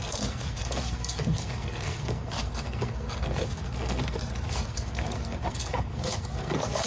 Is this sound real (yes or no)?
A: no